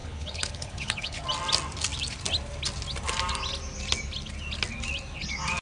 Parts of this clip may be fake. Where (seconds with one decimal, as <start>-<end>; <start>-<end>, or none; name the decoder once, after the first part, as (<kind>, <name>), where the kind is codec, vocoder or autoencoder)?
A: 0.0-1.2 (codec, HILCodec)